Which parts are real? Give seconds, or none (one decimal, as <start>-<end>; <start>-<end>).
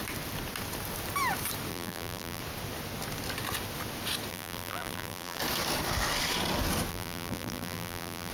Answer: 0.0-1.7; 2.4-4.3; 5.4-6.9